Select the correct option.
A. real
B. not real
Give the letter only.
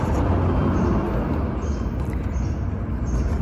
A